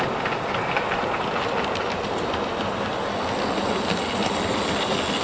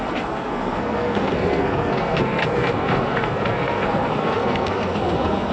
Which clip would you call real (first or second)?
first